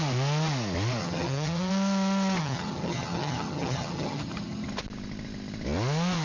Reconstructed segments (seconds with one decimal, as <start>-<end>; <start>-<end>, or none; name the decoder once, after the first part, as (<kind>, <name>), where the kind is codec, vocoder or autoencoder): 1.0-1.7 (vocoder, HiFi-GAN); 2.4-4.7